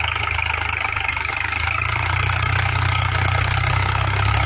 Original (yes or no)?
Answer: no